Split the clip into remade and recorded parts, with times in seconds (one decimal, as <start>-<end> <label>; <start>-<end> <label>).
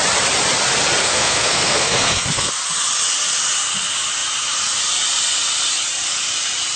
0.0-1.0 recorded; 1.0-2.5 remade; 2.5-6.8 recorded